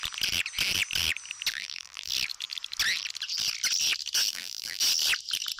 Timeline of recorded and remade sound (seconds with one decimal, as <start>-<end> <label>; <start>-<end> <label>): 0.0-1.5 recorded; 1.5-2.1 remade; 2.1-4.3 recorded; 4.3-4.8 remade; 4.8-5.6 recorded